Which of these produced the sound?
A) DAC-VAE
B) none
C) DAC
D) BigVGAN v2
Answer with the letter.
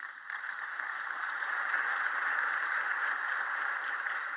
D